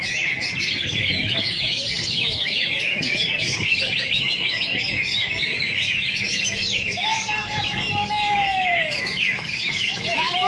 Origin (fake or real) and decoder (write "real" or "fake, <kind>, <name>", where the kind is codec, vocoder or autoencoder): fake, codec, DAC